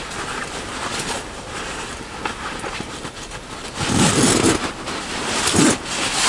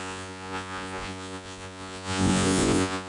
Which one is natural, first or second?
first